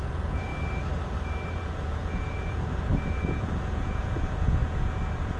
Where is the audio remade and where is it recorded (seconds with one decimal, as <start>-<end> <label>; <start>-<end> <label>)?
0.0-0.5 remade; 0.5-1.5 recorded; 1.5-5.4 remade